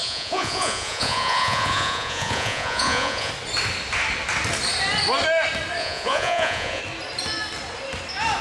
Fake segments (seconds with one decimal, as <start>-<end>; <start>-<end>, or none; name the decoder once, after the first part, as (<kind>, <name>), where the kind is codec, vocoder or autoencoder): 0.0-3.3 (vocoder, Vocos); 5.8-6.8